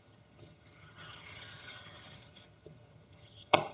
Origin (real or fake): fake